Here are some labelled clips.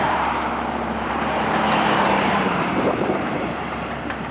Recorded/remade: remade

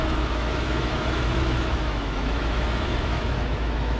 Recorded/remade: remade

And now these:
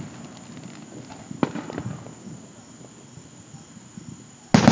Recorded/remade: recorded